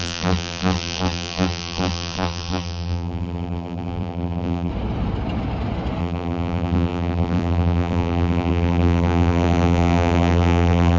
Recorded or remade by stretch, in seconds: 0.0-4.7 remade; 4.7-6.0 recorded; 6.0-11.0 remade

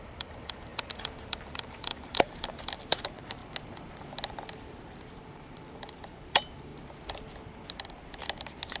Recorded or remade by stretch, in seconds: 0.0-3.4 remade; 3.4-5.1 recorded; 5.1-6.7 remade; 6.7-8.8 recorded

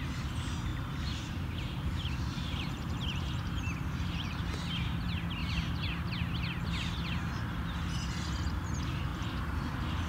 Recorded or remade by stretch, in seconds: 0.0-0.7 recorded; 0.7-4.5 remade; 4.5-5.4 recorded; 5.4-6.1 remade; 6.1-10.1 recorded

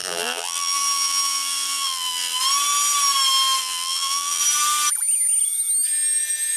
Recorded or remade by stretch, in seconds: 0.0-2.4 remade; 2.4-3.6 recorded; 3.6-4.4 remade; 4.4-6.6 recorded

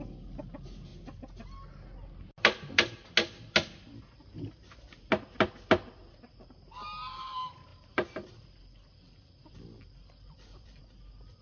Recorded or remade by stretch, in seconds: 0.0-7.7 recorded; 7.7-10.8 remade; 10.8-11.4 recorded

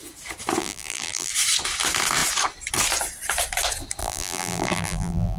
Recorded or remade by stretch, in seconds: 0.0-0.6 recorded; 0.6-1.3 remade; 1.3-4.0 recorded; 4.0-5.4 remade